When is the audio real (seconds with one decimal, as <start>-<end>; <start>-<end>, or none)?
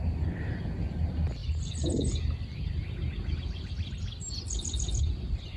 0.0-5.6